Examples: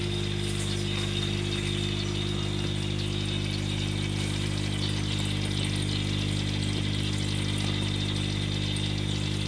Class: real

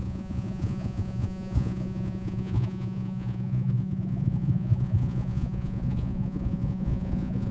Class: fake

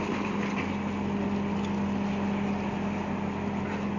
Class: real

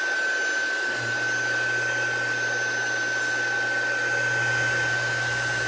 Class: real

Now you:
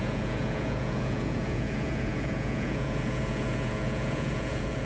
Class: fake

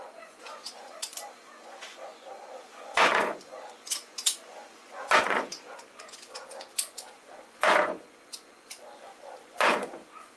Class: fake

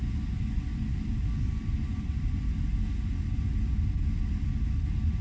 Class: real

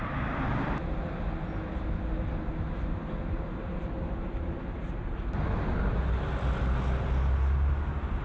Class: real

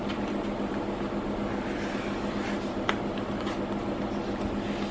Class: real